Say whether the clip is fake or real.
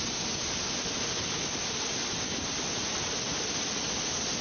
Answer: real